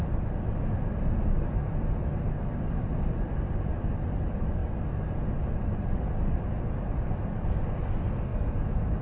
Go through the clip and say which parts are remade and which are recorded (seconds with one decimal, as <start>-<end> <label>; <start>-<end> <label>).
0.0-4.6 remade; 4.6-7.0 recorded; 7.0-8.3 remade; 8.3-9.0 recorded